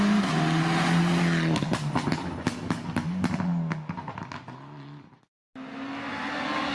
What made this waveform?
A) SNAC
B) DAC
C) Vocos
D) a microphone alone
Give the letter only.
D